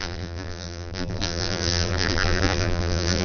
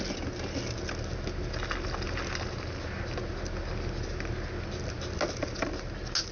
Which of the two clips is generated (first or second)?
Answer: first